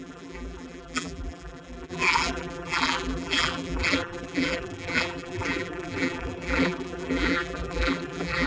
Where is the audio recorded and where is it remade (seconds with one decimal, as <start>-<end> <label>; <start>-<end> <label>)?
0.0-8.5 remade